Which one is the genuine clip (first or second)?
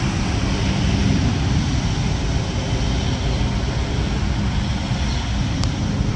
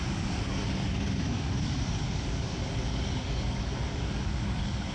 first